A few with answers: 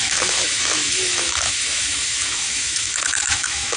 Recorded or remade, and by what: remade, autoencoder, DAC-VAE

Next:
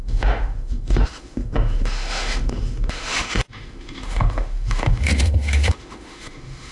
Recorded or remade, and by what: remade, autoencoder, DAC-VAE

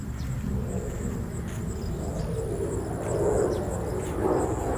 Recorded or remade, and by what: recorded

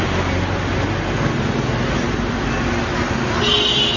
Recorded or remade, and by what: recorded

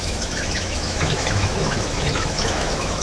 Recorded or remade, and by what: remade, autoencoder, DAC-VAE